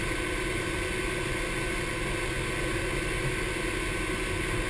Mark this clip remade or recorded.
recorded